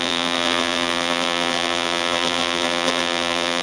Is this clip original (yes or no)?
no